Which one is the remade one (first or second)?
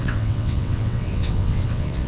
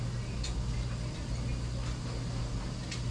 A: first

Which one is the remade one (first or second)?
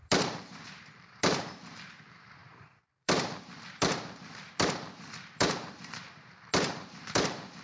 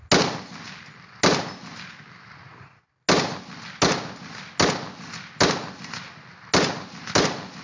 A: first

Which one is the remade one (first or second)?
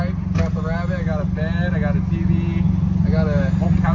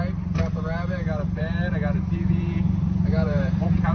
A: second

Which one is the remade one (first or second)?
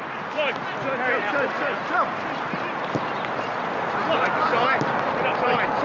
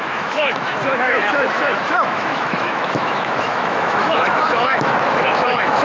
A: second